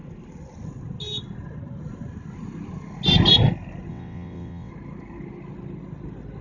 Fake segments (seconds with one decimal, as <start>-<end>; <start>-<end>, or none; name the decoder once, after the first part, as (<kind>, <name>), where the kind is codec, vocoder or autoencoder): 3.9-4.7 (vocoder, WaveNeXt)